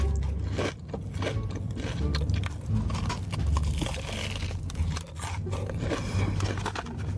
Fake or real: real